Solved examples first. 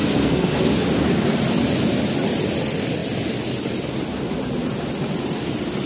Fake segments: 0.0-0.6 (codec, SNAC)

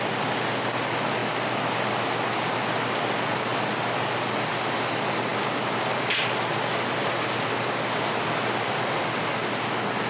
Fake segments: none

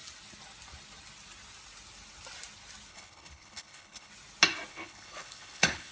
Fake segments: 2.9-4.1 (codec, HILCodec); 4.7-5.9

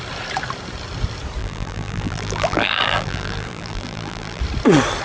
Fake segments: 1.4-4.4 (vocoder, BigVGAN v2)

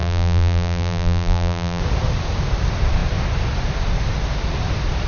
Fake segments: 0.0-1.8 (vocoder, BigVGAN v2)